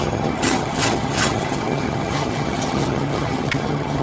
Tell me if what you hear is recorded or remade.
remade